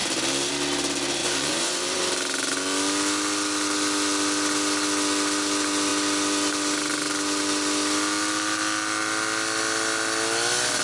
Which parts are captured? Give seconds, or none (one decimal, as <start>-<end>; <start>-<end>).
0.0-1.2; 2.0-10.8

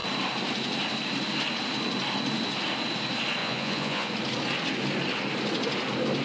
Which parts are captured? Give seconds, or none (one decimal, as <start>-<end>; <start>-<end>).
0.0-3.4; 4.1-6.2